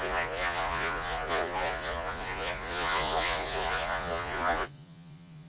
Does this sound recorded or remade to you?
remade